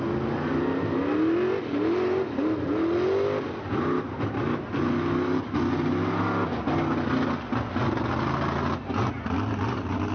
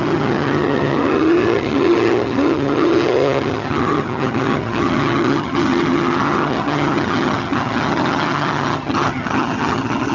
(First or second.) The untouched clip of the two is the first